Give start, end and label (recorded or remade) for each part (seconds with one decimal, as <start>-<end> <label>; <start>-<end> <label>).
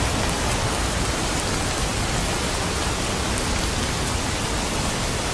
0.0-0.8 recorded; 0.8-1.5 remade; 1.5-5.3 recorded